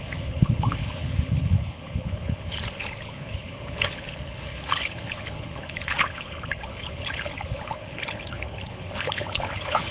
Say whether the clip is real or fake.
fake